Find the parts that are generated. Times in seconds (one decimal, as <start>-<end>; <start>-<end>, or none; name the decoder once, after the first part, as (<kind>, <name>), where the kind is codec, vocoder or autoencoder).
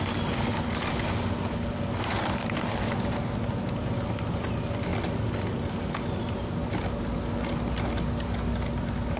none